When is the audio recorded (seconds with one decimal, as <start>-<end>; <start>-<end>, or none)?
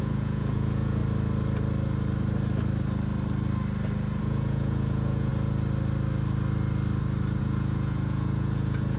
1.0-4.2; 5.3-7.4